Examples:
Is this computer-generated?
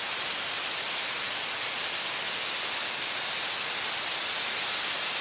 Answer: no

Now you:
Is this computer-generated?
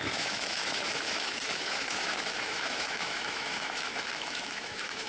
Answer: yes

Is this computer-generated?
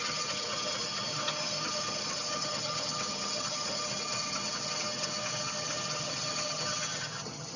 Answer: yes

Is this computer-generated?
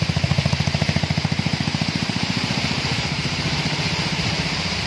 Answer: yes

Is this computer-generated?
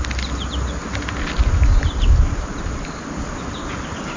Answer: no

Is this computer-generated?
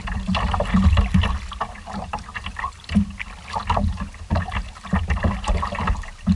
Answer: no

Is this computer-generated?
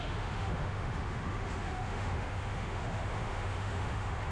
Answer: yes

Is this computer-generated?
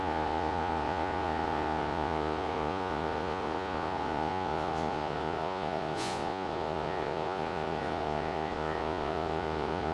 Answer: yes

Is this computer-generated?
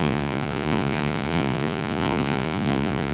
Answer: yes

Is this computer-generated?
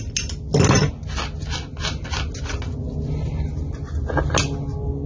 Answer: no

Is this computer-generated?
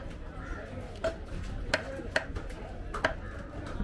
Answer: no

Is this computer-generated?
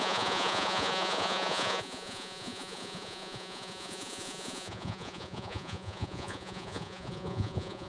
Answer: yes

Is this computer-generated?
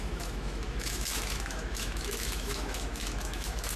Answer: yes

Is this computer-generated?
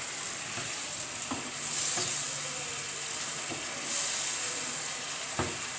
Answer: no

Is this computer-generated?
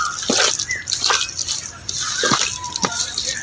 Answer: no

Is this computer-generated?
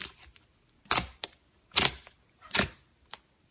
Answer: no